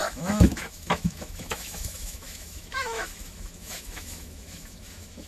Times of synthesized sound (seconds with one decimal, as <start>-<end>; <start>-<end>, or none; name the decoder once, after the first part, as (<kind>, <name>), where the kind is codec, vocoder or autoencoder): 0.0-5.3 (autoencoder, DAC-VAE)